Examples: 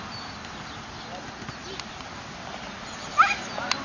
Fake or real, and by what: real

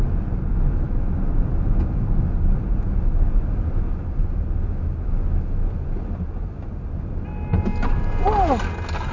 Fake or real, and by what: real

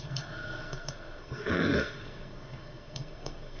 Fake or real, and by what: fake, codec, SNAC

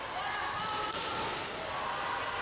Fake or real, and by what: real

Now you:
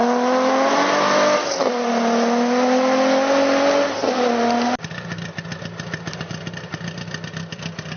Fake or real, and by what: real